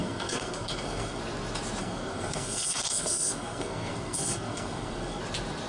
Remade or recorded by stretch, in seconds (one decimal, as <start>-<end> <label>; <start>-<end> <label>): 0.0-1.2 remade; 1.2-1.8 recorded; 1.8-5.2 remade; 5.2-5.7 recorded